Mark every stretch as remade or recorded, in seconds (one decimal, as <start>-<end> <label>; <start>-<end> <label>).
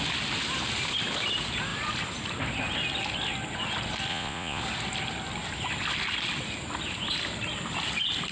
0.0-4.1 recorded; 4.1-4.6 remade; 4.6-8.3 recorded